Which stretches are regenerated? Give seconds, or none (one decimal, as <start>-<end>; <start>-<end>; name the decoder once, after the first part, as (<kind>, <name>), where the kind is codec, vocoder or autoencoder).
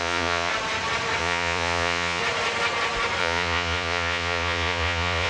0.0-0.5 (vocoder, Vocos); 1.2-2.2; 3.2-5.3